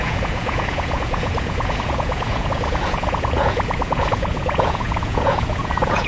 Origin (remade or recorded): remade